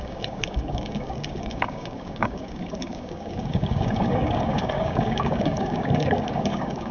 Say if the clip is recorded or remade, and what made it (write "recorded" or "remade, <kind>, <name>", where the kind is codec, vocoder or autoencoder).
remade, codec, DAC